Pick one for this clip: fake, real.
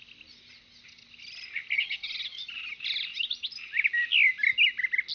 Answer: real